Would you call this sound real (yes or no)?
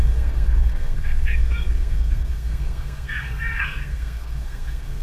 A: no